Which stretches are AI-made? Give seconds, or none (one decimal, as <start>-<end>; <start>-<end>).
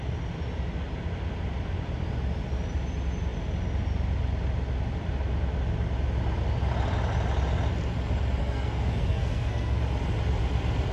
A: 8.4-9.8